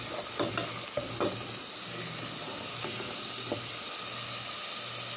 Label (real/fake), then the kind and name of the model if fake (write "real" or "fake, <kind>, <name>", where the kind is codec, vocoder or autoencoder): real